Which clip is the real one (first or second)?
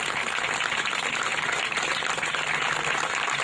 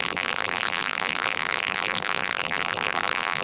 first